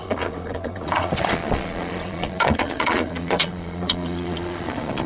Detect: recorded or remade remade